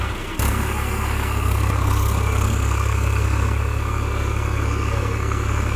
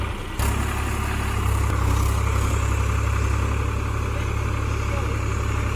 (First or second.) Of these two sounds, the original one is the second